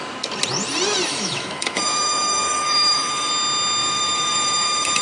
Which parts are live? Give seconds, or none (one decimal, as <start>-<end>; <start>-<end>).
0.0-1.1; 3.3-3.8